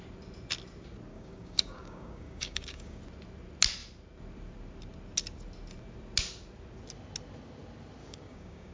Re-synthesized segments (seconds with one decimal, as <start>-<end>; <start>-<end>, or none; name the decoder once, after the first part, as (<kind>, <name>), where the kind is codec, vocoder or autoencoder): 1.1-3.0 (codec, DAC); 8.0-8.7